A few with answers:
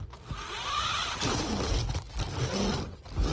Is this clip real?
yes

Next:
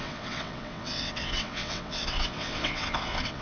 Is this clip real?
no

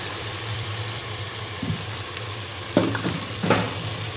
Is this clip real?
no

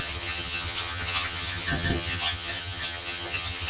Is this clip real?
no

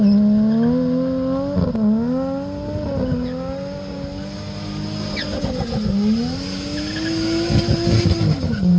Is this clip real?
yes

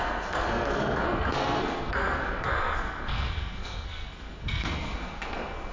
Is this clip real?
no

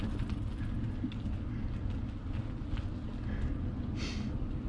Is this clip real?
yes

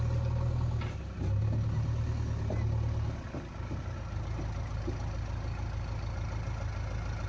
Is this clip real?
yes